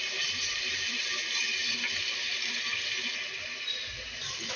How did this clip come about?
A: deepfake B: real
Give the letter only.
B